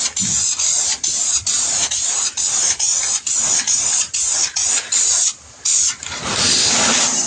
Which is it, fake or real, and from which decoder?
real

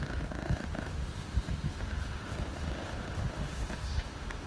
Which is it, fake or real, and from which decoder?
fake, autoencoder, DAC-VAE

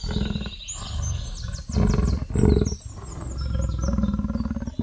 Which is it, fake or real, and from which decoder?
real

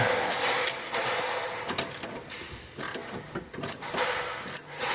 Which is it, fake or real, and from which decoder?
real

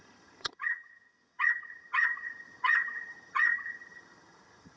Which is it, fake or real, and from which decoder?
fake, vocoder, HiFi-GAN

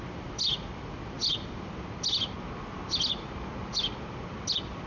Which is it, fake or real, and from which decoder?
real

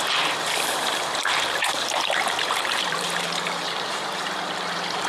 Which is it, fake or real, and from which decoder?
fake, vocoder, BigVGAN v2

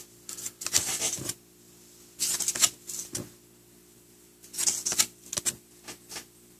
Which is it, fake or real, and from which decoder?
real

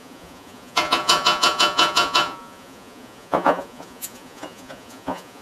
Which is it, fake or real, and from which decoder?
fake, vocoder, Vocos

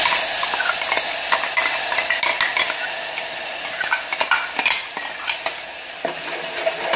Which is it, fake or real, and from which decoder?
real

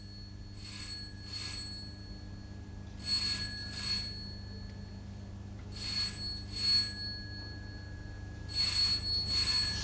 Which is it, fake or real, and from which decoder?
real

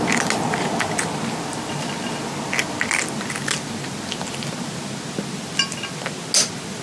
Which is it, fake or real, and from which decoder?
real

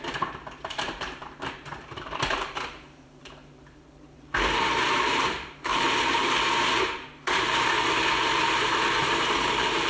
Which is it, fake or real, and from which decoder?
fake, vocoder, BigVGAN v2